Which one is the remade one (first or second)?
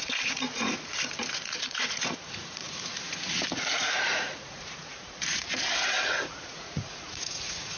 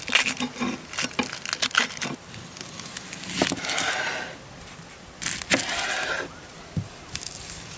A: first